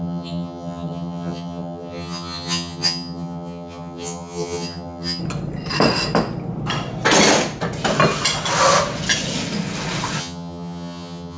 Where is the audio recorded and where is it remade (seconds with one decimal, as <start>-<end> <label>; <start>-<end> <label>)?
0.0-5.2 remade; 5.2-10.2 recorded; 10.2-11.4 remade